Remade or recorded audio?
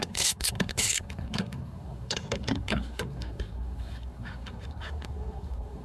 remade